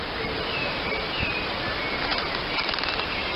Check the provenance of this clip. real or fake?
real